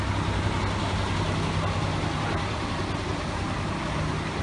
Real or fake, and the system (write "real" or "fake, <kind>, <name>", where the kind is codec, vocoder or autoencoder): real